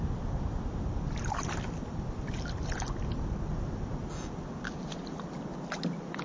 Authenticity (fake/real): real